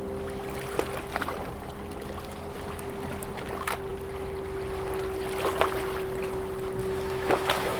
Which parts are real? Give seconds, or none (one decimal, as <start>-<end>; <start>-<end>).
0.0-6.8